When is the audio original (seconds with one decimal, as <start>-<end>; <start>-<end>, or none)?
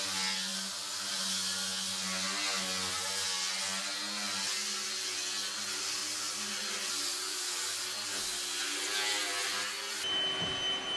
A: 0.0-11.0